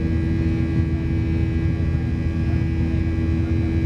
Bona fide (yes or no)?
yes